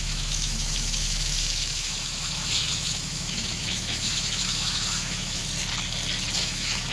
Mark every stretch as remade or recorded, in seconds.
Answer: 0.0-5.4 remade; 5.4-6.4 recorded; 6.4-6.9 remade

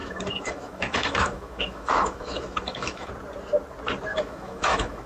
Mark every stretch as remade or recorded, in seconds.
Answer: 0.0-3.1 remade; 3.1-4.1 recorded; 4.1-5.1 remade

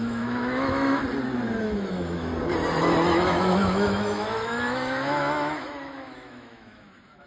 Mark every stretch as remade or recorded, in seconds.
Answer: 0.0-1.0 remade; 1.0-1.6 recorded; 1.6-2.3 remade; 2.3-3.1 recorded; 3.1-7.3 remade

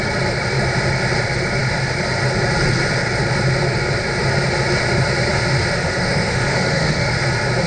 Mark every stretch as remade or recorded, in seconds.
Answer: 0.0-5.7 recorded; 5.7-7.1 remade; 7.1-7.7 recorded

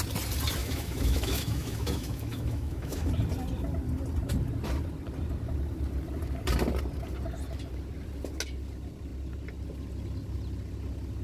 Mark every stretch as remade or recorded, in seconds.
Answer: 0.0-0.6 recorded; 0.6-3.1 remade; 3.1-11.2 recorded

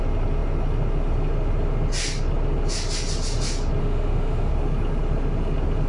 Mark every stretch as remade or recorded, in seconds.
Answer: 0.0-3.8 recorded; 3.8-4.5 remade; 4.5-5.9 recorded

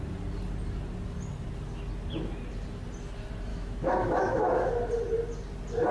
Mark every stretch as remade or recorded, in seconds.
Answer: 0.0-3.5 recorded; 3.5-4.7 remade; 4.7-5.9 recorded

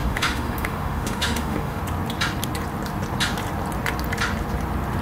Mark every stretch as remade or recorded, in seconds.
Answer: 0.0-1.8 remade; 1.8-5.0 recorded